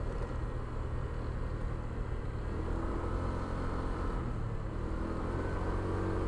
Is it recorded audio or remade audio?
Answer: recorded